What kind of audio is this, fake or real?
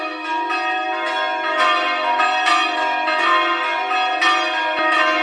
real